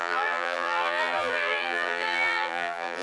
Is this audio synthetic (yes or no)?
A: yes